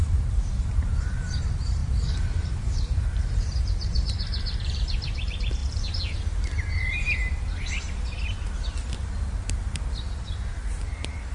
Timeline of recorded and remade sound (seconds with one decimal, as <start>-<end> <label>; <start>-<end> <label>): 0.0-5.6 remade; 5.6-10.6 recorded; 10.6-11.3 remade